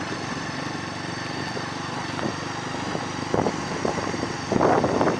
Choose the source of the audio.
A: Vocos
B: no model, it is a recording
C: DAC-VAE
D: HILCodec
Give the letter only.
B